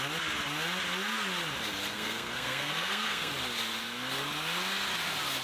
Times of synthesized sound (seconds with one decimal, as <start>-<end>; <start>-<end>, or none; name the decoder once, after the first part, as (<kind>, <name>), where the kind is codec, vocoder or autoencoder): 1.9-3.3 (codec, SNAC)